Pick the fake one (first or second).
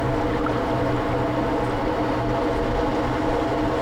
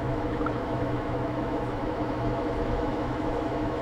second